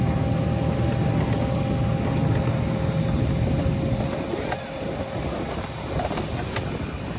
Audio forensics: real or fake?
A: real